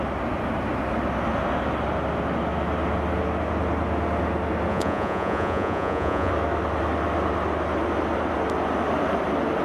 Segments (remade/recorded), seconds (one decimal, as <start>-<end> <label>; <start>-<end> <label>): 0.0-4.7 recorded; 4.7-6.3 remade; 6.3-9.6 recorded